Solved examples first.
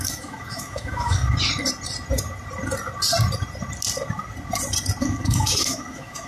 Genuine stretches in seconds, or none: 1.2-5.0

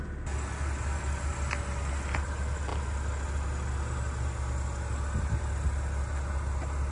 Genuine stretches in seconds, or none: 0.0-6.9

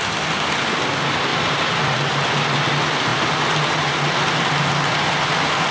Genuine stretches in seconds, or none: 0.0-1.3; 2.1-5.7

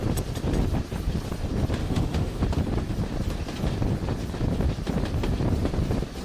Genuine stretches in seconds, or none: 0.0-1.8; 2.4-6.2

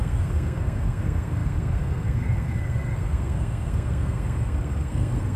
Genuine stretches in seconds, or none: none

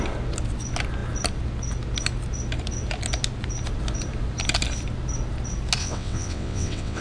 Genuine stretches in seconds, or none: 0.0-5.8